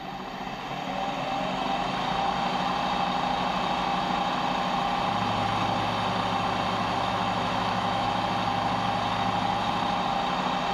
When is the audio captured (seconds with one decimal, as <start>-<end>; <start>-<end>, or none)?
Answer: 0.0-6.8; 8.2-10.7